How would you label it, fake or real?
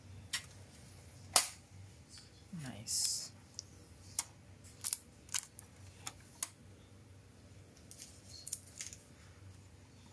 real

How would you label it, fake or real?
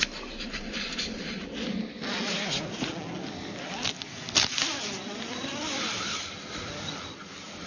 real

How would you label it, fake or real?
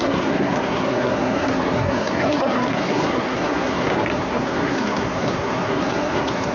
fake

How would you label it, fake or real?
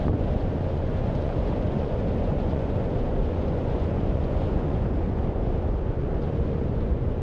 fake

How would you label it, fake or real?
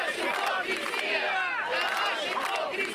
real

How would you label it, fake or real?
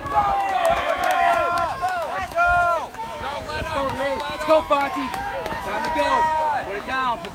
fake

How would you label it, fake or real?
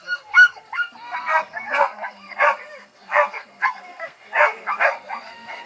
fake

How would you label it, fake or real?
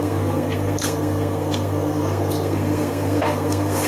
fake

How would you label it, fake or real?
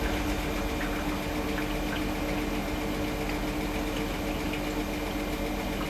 real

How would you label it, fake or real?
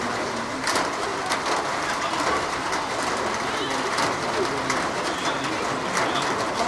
real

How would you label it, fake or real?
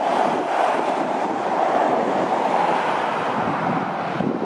real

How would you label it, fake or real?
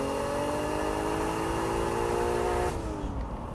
real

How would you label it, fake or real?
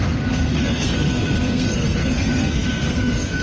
fake